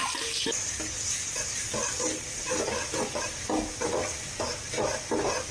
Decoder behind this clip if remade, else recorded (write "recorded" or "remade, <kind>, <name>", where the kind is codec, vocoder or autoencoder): recorded